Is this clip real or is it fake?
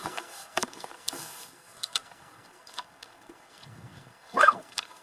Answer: fake